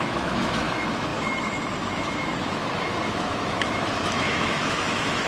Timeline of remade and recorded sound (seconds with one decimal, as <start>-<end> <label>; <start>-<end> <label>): 0.0-5.3 remade